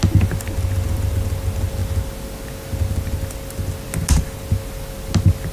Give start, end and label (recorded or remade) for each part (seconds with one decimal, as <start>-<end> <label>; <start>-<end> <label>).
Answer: 0.0-5.5 recorded